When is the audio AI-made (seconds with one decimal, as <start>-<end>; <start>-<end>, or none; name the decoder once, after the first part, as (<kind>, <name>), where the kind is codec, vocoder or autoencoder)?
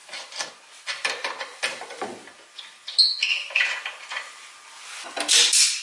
0.0-0.5 (vocoder, BigVGAN v2)